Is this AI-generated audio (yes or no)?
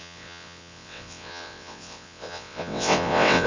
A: yes